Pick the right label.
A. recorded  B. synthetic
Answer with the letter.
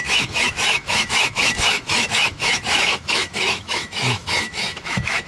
B